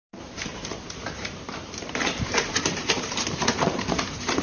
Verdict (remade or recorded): remade